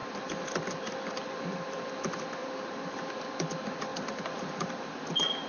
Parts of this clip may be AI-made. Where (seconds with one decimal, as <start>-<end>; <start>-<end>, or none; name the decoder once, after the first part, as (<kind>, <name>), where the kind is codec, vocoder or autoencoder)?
0.0-1.9 (vocoder, BigVGAN v2); 2.4-3.2; 3.9-5.5